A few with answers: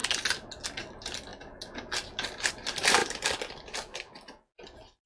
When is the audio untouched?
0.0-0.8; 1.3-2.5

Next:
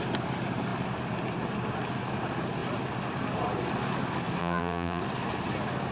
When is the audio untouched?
0.0-4.4; 5.0-5.9

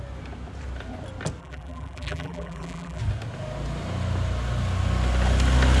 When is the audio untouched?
0.0-1.4; 3.0-5.8

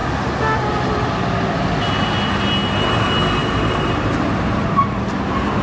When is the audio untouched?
0.0-3.4; 5.0-5.6

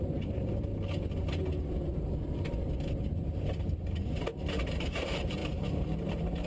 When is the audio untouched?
0.7-4.6